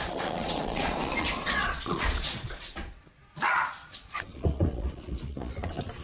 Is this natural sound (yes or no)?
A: no